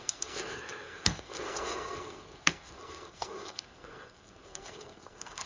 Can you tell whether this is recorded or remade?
remade